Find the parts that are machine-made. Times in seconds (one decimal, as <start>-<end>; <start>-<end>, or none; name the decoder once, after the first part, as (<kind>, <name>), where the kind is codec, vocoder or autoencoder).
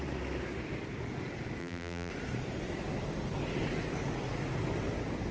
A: 1.6-2.1 (vocoder, BigVGAN v2)